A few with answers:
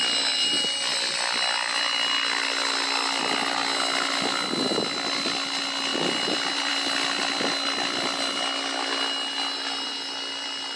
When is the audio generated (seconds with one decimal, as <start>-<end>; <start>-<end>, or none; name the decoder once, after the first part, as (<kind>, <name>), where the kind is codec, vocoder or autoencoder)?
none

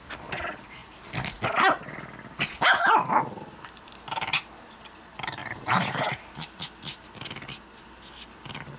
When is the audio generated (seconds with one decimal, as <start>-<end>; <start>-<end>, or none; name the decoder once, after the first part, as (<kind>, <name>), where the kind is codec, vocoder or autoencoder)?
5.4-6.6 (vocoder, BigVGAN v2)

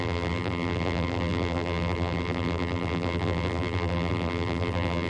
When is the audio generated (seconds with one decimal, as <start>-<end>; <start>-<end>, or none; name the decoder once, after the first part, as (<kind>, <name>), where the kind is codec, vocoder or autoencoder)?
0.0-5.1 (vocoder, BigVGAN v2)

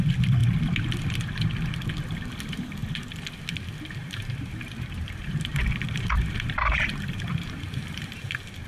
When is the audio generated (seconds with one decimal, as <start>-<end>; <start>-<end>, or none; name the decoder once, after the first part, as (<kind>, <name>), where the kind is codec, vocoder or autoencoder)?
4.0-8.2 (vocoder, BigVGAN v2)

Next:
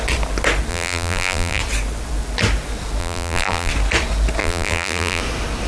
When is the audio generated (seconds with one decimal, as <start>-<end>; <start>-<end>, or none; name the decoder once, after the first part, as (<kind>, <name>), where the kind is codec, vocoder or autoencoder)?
0.7-1.6 (vocoder, BigVGAN v2); 3.0-3.7; 4.4-5.2

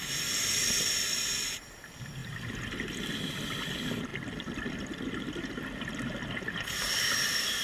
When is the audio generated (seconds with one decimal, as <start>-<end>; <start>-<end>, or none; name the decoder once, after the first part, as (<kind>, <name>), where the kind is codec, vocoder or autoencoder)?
none

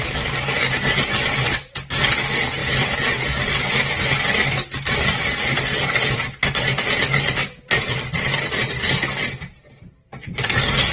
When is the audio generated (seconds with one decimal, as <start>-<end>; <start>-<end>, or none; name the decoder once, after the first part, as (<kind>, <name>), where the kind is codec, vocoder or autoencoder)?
none